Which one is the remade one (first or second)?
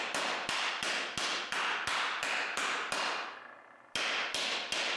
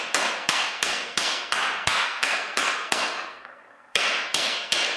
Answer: second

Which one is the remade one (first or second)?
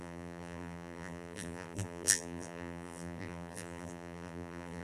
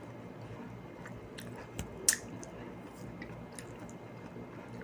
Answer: first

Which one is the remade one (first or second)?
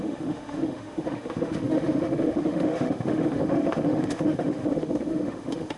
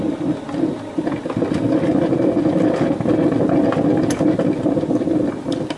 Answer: first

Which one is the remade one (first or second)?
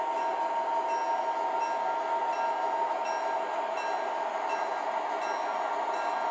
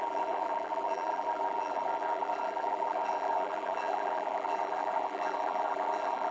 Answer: second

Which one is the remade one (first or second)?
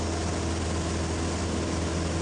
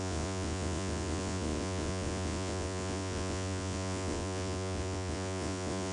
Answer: second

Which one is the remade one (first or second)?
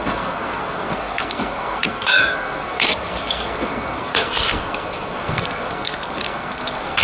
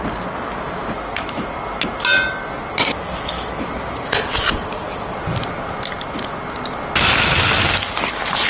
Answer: first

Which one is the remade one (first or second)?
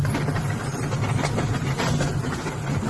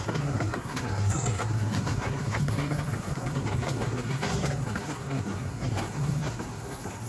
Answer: second